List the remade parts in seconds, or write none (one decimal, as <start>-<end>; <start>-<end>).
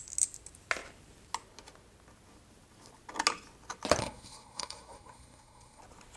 4.0-5.8